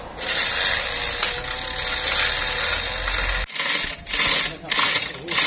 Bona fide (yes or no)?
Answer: yes